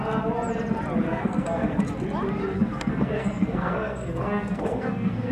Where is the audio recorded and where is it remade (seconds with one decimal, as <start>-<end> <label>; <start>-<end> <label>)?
0.0-1.1 recorded; 1.1-1.8 remade; 1.8-2.5 recorded; 2.5-5.3 remade